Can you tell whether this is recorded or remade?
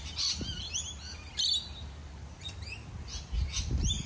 recorded